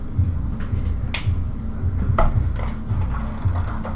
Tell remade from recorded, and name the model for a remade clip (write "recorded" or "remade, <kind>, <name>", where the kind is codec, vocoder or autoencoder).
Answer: recorded